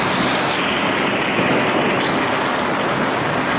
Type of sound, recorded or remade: recorded